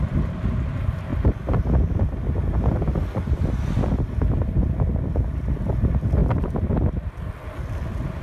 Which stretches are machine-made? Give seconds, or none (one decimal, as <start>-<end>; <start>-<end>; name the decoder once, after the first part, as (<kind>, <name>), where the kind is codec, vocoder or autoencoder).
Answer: none